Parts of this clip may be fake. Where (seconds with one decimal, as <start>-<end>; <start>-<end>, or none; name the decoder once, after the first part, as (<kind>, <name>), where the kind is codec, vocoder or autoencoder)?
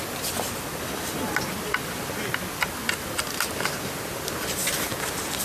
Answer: none